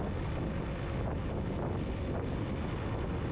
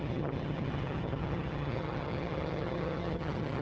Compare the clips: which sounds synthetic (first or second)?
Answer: second